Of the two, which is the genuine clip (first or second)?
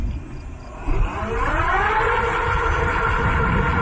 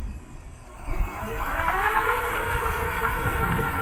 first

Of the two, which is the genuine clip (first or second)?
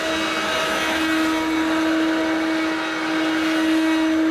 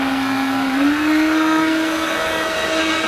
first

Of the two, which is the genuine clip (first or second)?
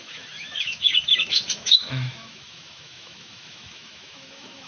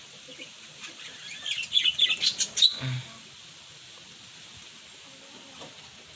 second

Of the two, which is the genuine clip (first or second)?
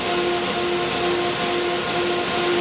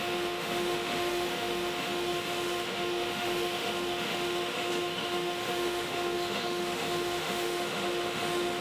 first